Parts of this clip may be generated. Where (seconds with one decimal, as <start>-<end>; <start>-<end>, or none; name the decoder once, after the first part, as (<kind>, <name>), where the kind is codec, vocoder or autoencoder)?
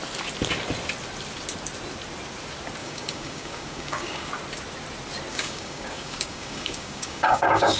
2.8-4.3 (codec, DAC); 5.3-7.8